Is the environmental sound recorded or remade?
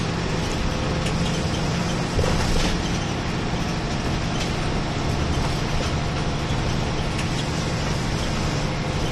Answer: recorded